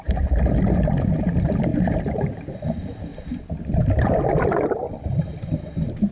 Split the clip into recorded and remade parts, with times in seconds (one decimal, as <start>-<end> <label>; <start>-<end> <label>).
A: 0.0-6.1 recorded